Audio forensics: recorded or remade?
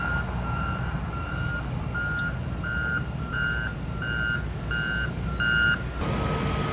recorded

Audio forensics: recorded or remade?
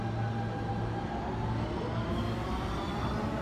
recorded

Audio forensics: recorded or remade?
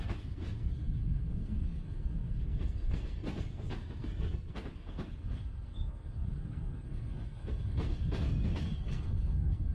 remade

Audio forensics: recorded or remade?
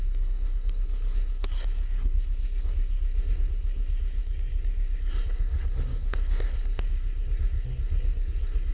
remade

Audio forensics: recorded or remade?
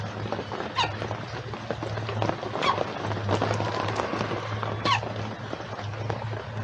recorded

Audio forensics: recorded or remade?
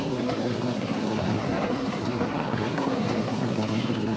remade